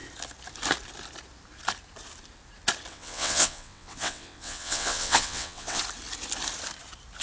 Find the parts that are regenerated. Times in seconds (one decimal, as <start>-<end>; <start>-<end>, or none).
2.9-5.8